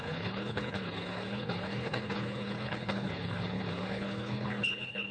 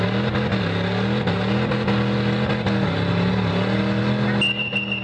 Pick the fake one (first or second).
first